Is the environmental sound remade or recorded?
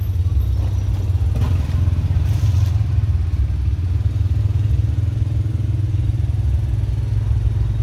recorded